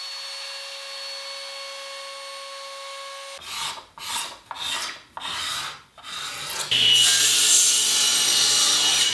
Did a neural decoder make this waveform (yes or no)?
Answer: no